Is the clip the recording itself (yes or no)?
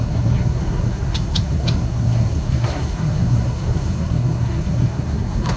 no